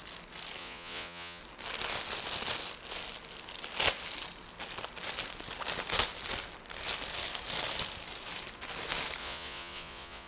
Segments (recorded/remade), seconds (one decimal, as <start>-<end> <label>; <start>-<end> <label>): 0.0-0.6 recorded; 0.6-1.4 remade; 1.4-9.2 recorded; 9.2-10.3 remade